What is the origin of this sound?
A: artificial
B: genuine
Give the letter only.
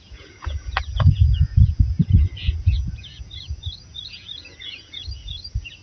A